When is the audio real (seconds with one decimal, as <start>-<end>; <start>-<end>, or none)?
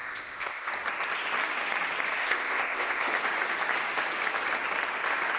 0.7-2.2; 3.0-5.4